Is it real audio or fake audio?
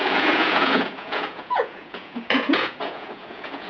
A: fake